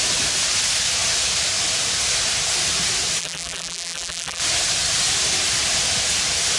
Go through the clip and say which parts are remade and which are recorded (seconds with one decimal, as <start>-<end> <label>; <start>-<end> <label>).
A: 0.0-3.2 recorded; 3.2-4.4 remade; 4.4-6.6 recorded